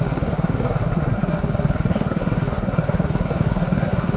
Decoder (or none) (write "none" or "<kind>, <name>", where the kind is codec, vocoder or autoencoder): codec, SNAC